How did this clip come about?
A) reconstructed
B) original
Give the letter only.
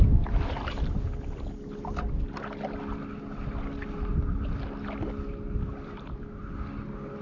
B